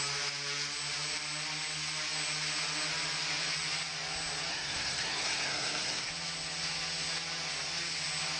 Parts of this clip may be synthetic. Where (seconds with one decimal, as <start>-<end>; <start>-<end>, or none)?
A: 4.5-6.1